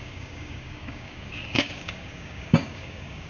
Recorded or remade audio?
remade